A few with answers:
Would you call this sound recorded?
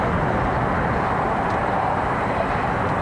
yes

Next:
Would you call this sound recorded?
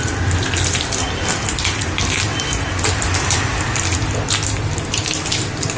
yes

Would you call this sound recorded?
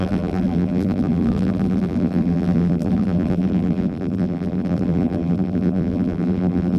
no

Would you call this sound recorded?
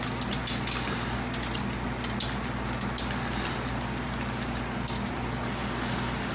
yes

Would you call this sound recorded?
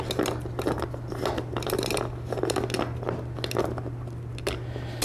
yes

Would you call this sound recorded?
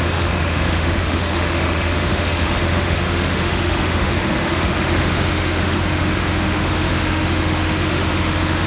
no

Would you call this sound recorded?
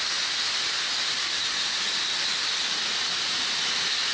yes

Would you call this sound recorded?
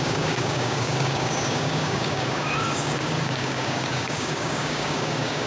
no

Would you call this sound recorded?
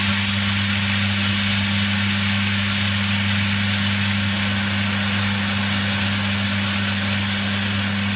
yes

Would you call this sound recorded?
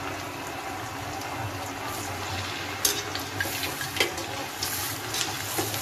yes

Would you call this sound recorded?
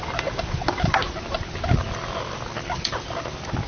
yes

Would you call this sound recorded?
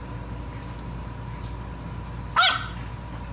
yes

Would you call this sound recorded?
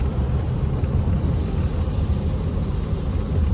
yes